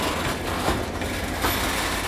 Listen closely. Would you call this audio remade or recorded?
recorded